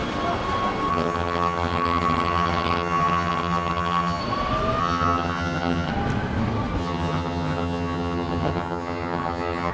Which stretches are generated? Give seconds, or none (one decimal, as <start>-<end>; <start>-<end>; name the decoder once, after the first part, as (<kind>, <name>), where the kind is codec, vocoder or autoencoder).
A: 0.9-4.2 (vocoder, HiFi-GAN); 4.8-5.9; 6.8-9.7